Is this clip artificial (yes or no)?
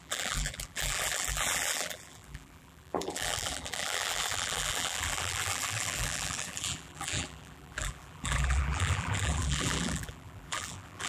yes